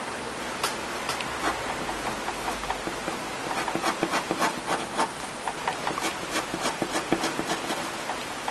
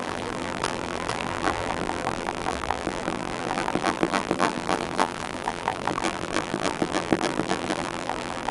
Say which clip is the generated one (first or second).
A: second